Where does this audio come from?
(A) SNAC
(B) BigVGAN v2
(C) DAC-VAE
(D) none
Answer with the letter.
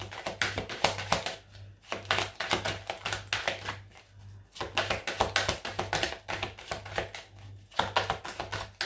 D